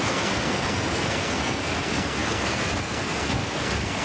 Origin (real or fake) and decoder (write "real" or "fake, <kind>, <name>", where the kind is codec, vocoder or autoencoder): fake, codec, SNAC